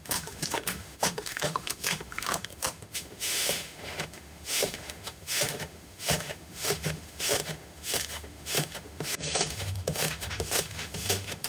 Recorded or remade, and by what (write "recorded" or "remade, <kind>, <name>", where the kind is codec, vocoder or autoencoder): remade, autoencoder, DAC-VAE